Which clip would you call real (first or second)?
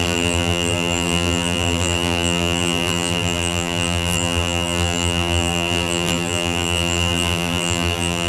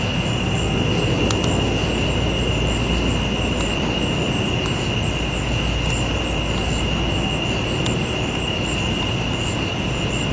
second